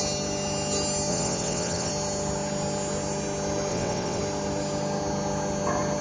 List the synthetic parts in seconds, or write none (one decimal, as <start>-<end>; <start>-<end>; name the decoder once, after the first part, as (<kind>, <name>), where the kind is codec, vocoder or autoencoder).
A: 1.1-1.9 (vocoder, WaveNeXt); 3.7-4.2